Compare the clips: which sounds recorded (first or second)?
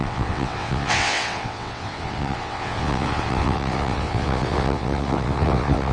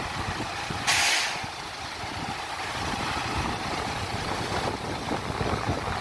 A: second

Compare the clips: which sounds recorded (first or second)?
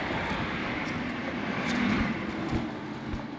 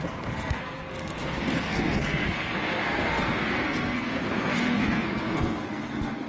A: first